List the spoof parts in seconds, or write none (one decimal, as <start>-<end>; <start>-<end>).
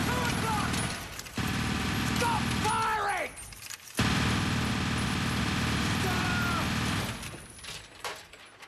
none